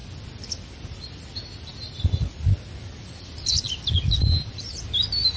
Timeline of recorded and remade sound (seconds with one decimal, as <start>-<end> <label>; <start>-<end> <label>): 0.0-5.4 recorded